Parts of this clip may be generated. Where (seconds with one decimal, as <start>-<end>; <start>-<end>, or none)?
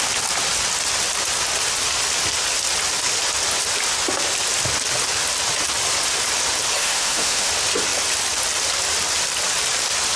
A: 6.8-7.5